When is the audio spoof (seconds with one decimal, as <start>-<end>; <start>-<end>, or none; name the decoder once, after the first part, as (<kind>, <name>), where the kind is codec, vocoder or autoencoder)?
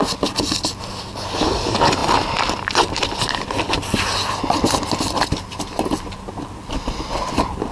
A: none